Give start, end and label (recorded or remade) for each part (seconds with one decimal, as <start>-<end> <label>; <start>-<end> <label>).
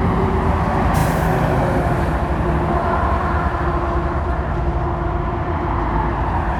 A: 0.0-6.6 recorded